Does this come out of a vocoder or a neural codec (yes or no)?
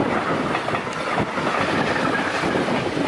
no